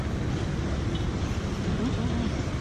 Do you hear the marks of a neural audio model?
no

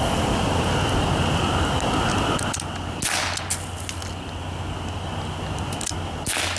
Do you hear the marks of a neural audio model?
no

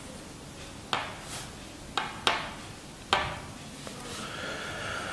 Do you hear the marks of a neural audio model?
no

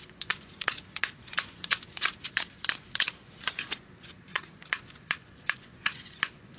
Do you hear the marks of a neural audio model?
yes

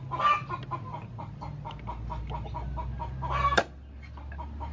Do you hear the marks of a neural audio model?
no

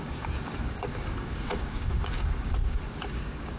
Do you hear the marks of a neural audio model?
yes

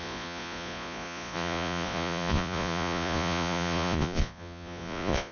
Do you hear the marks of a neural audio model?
yes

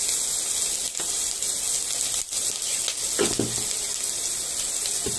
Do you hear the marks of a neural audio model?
no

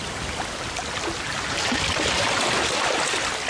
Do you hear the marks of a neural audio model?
no